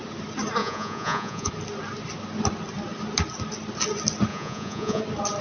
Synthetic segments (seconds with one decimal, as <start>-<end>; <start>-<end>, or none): 0.6-1.5; 4.3-5.0